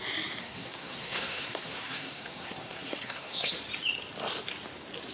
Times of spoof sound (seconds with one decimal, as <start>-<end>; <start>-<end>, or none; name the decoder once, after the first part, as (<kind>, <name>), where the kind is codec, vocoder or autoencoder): 0.4-3.5 (codec, SNAC)